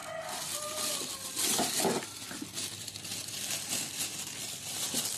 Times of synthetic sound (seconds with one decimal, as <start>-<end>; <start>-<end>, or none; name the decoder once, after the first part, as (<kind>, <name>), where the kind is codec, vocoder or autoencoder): none